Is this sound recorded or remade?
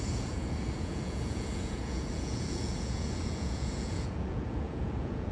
remade